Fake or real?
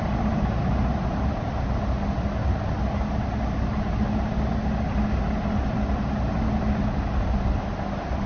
real